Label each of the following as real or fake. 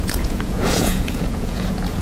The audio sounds fake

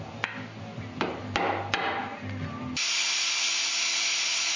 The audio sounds real